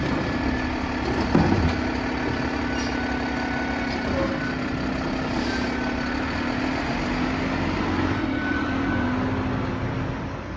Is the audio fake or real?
real